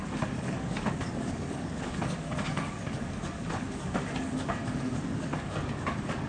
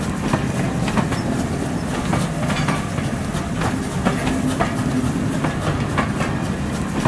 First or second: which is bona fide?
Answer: second